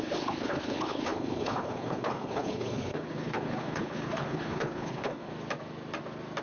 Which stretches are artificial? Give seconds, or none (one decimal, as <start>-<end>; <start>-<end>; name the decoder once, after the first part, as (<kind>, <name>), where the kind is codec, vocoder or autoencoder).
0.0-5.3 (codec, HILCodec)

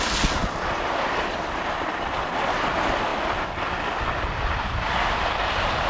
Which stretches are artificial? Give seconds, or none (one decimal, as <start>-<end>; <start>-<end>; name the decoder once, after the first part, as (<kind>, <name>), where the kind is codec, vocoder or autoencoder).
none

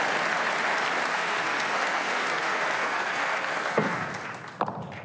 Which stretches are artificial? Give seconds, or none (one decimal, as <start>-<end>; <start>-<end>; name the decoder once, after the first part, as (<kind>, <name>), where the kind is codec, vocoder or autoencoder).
1.1-4.1 (codec, SNAC)